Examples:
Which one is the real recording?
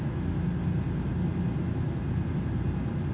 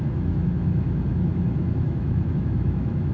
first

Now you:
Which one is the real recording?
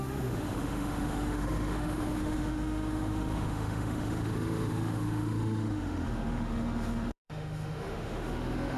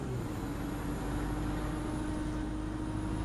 second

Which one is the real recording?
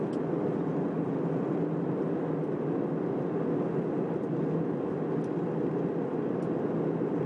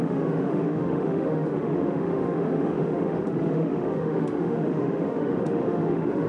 first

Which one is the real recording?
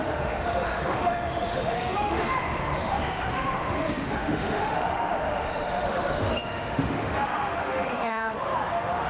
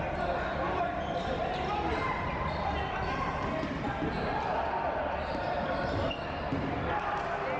second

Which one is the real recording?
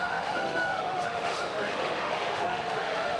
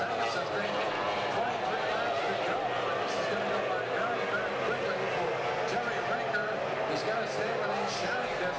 second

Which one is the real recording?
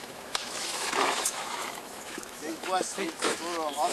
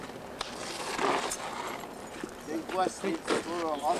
second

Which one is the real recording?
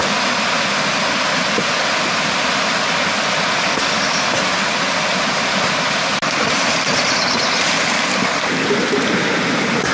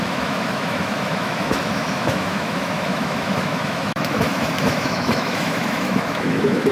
first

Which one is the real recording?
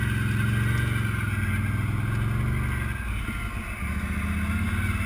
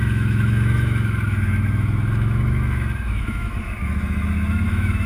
first